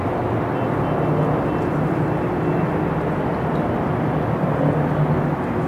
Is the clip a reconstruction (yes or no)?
no